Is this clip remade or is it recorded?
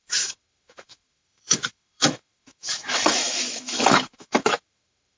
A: remade